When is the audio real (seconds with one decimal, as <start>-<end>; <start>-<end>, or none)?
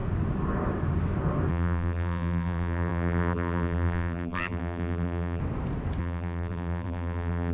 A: 0.0-1.5; 5.4-6.0